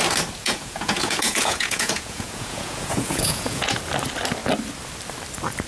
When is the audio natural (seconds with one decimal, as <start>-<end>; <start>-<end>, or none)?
0.0-0.4; 3.8-5.7